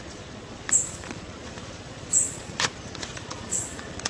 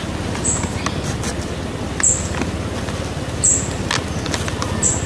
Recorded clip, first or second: second